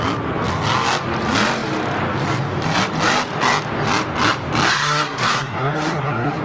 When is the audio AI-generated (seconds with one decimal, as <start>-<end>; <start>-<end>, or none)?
4.7-6.4